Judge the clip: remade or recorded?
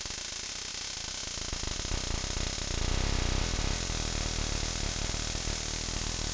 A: recorded